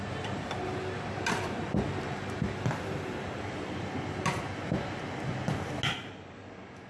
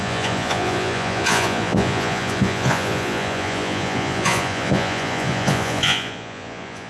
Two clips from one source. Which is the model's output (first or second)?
second